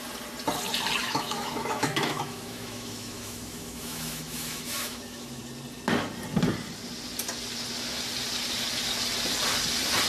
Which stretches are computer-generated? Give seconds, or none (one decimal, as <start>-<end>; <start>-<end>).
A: 1.0-5.4